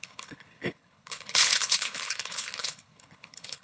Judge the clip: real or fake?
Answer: fake